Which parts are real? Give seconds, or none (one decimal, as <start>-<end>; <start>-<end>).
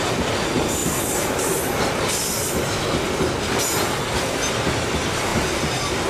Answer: 0.0-0.8; 2.0-6.1